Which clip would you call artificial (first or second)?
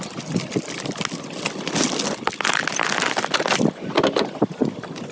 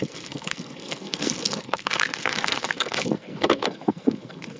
second